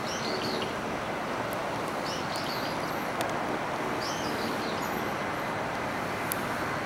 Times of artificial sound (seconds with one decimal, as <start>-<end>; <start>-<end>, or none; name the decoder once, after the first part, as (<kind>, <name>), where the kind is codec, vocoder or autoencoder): none